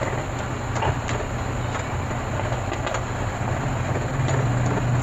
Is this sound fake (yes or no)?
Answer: no